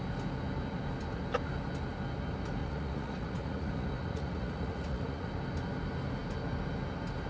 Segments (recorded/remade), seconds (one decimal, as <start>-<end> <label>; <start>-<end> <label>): 0.0-2.6 recorded; 2.6-5.3 remade; 5.3-7.3 recorded